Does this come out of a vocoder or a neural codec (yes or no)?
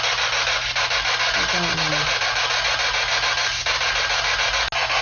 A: no